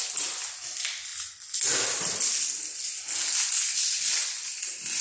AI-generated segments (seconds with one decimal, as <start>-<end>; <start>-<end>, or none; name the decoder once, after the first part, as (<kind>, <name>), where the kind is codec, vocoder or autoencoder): none